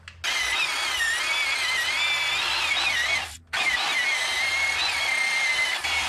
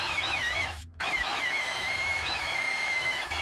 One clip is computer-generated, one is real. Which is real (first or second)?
first